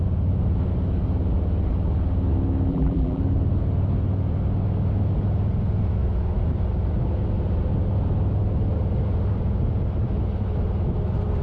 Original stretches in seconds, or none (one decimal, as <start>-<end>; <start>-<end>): 0.0-2.7; 3.2-11.4